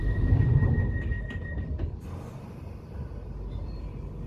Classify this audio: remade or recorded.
recorded